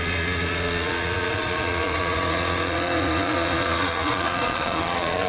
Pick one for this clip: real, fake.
fake